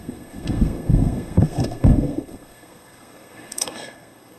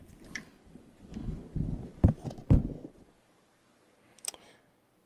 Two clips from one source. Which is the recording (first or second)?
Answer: second